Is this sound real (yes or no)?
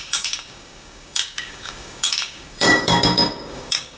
no